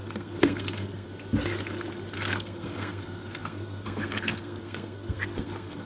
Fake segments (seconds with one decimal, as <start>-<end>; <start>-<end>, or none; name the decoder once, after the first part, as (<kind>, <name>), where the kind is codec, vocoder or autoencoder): 0.0-1.1 (codec, SNAC); 2.3-5.9